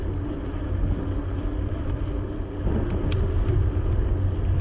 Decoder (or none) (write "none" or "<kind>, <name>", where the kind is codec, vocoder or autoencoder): none